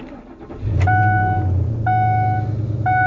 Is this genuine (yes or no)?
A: yes